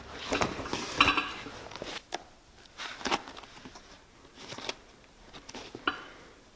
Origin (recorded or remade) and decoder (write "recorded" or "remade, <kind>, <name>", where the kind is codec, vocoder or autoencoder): recorded